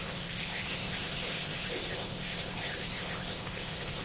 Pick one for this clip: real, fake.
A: fake